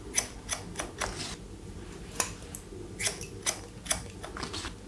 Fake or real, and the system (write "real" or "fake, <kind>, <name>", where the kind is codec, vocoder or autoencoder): real